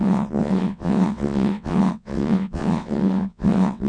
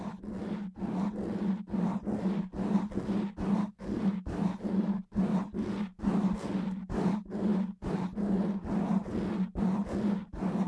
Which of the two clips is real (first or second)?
second